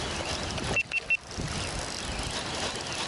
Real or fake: real